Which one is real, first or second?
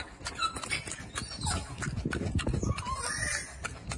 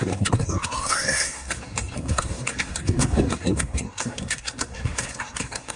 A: first